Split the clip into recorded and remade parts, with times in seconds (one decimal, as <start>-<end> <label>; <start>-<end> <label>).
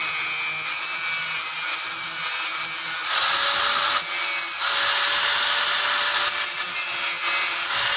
0.0-8.0 recorded